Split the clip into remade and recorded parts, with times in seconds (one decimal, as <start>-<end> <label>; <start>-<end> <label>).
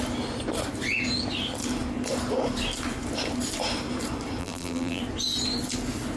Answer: 0.0-4.4 recorded; 4.4-5.0 remade; 5.0-6.2 recorded